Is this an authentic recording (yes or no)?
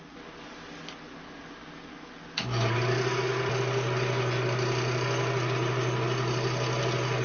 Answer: yes